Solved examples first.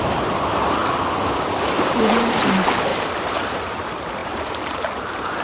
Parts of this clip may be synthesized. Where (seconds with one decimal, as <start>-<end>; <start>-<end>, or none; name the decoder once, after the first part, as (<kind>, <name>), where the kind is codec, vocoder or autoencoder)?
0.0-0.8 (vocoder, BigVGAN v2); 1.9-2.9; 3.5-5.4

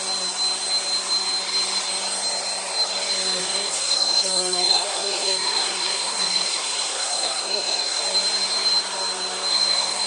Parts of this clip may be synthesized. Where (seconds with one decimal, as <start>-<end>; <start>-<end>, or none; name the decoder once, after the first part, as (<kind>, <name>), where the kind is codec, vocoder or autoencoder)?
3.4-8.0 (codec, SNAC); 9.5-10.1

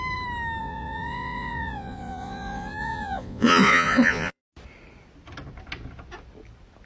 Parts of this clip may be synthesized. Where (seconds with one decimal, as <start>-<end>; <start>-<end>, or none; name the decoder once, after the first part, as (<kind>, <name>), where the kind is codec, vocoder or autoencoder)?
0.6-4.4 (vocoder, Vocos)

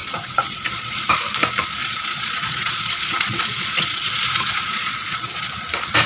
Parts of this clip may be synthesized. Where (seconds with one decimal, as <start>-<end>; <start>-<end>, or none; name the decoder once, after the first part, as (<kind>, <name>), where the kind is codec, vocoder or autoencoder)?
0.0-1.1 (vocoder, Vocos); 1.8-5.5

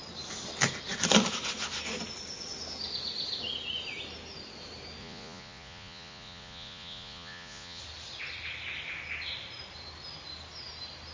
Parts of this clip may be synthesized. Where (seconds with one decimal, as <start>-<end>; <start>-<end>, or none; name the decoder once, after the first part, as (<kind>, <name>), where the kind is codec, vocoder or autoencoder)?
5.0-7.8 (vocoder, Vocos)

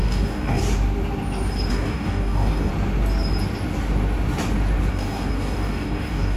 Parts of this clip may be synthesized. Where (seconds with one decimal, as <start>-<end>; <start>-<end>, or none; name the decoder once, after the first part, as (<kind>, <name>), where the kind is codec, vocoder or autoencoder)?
0.0-0.6 (codec, DAC); 1.7-2.7; 4.9-6.4

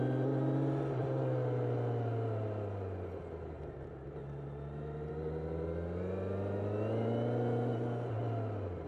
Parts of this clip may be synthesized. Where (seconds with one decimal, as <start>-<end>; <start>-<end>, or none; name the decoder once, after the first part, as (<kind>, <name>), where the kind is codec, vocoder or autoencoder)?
none

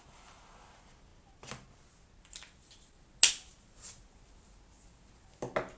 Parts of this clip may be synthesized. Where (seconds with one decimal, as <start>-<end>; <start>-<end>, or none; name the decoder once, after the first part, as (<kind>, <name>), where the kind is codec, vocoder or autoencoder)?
none